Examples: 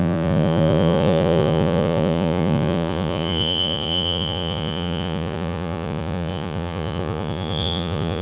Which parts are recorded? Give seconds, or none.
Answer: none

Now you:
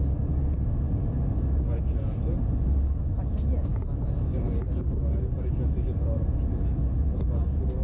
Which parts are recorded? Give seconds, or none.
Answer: 0.0-7.8